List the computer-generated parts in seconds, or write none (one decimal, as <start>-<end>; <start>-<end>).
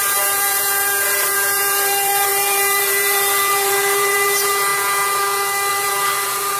0.0-4.7; 5.7-6.6